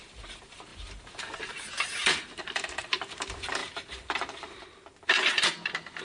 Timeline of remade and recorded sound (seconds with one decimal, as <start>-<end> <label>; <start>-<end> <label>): 0.0-6.0 remade